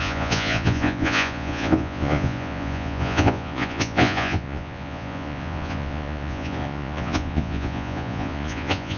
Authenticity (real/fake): fake